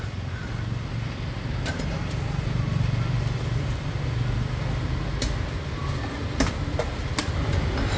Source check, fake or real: real